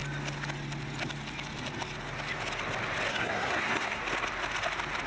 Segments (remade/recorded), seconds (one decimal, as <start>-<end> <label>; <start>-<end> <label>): 0.0-3.1 recorded; 3.1-4.0 remade; 4.0-5.1 recorded